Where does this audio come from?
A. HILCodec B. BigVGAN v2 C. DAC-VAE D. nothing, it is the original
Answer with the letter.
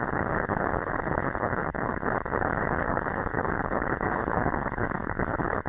A